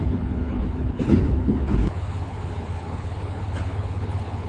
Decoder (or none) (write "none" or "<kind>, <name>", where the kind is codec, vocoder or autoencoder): codec, HILCodec